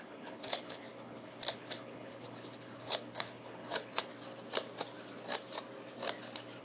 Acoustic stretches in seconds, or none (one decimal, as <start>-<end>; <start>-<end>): 4.1-6.6